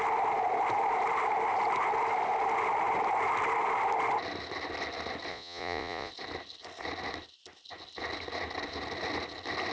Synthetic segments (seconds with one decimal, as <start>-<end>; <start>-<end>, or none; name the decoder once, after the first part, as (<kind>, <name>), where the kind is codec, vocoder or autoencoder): 5.3-6.1 (vocoder, Vocos)